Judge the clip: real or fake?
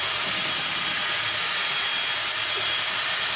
real